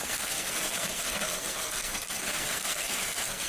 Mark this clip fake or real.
fake